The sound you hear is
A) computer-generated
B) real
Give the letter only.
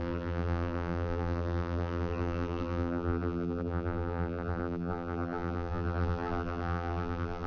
A